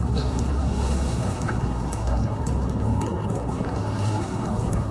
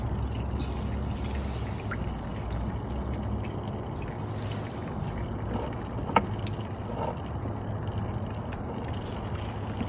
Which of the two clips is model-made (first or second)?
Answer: first